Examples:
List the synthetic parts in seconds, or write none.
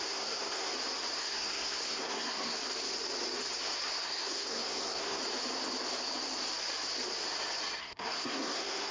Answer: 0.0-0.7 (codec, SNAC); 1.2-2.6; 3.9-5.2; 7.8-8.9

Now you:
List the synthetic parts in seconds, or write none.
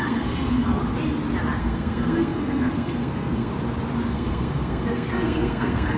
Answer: 0.0-0.8 (codec, SNAC); 1.6-3.5; 4.1-6.0